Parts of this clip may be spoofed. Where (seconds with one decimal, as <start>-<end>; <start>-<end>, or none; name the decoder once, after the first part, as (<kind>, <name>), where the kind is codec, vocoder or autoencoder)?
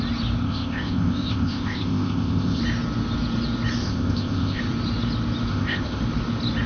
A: 0.4-2.6 (codec, ZipCodec); 3.8-4.6; 5.5-6.0